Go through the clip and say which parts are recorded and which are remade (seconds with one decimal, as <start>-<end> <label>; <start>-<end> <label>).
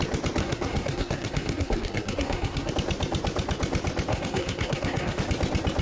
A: 0.0-0.4 recorded; 0.4-2.7 remade; 2.7-4.1 recorded; 4.1-5.2 remade; 5.2-5.8 recorded